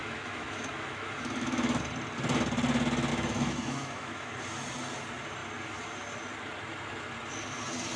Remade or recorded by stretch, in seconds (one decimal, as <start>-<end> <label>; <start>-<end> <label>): 0.0-1.8 remade; 1.8-3.1 recorded; 3.1-4.3 remade; 4.3-8.0 recorded